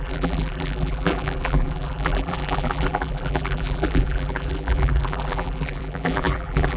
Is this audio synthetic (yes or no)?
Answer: yes